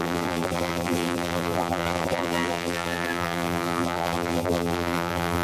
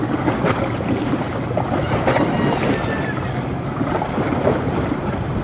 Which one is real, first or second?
second